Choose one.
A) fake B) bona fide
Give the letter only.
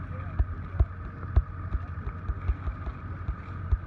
B